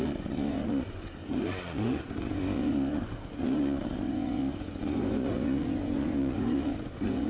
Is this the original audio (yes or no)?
no